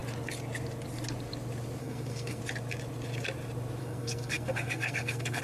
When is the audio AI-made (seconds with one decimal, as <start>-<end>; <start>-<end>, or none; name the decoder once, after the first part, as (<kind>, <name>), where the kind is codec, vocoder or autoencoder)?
1.8-2.4 (codec, SNAC); 3.8-5.4